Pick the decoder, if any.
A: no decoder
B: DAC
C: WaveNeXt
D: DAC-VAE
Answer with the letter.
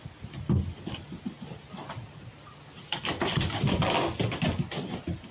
A